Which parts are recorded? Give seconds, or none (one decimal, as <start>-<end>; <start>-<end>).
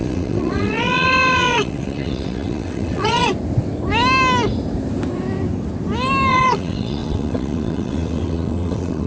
3.3-6.3